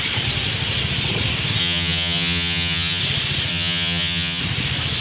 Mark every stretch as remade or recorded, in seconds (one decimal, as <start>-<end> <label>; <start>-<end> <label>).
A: 0.0-1.6 recorded; 1.6-3.0 remade; 3.0-3.5 recorded; 3.5-4.4 remade; 4.4-5.0 recorded